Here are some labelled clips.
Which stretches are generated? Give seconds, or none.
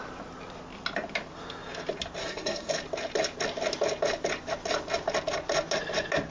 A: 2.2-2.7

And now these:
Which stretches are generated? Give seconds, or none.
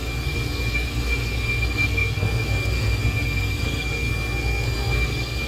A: 0.0-5.5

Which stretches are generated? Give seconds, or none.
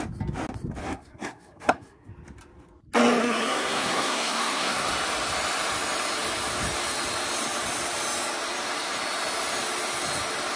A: 0.8-2.1; 3.2-4.9